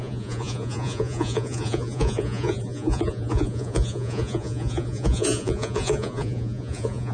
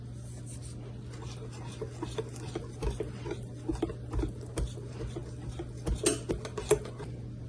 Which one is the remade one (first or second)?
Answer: first